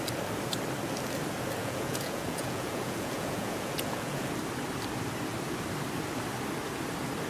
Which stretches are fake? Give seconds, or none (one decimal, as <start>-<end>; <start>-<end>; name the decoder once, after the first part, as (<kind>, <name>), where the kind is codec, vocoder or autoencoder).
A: 1.6-4.3 (vocoder, Vocos)